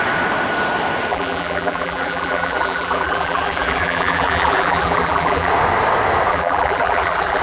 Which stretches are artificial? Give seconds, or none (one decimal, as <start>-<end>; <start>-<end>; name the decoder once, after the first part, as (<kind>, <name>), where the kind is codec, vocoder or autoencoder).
1.1-5.5 (vocoder, BigVGAN v2); 6.3-7.4